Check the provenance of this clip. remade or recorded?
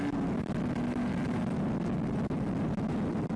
recorded